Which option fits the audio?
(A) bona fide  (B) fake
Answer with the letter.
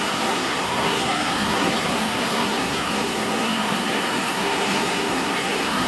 B